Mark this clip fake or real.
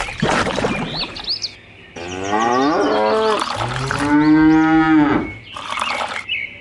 real